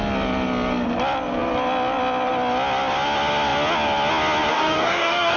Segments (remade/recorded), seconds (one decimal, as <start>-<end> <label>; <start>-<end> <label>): 0.0-4.5 recorded; 4.5-5.4 remade